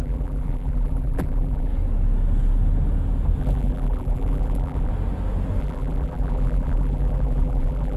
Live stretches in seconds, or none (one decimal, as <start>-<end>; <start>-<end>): 1.7-3.4; 4.9-5.6